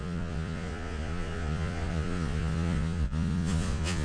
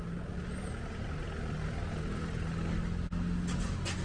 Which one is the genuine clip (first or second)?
second